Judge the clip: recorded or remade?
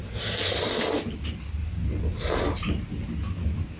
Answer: recorded